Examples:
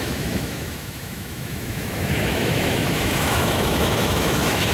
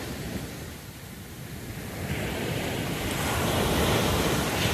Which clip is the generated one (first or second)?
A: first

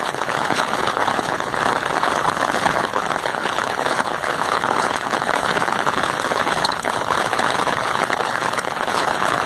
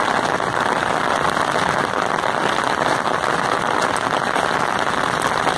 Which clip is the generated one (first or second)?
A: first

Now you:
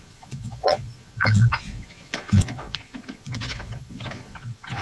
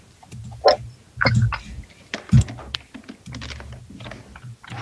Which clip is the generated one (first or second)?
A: first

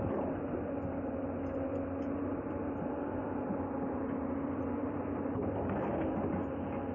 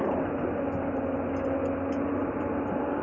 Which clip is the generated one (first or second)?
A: first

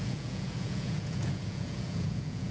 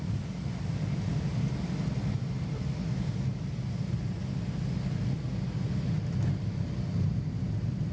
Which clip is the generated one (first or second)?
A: first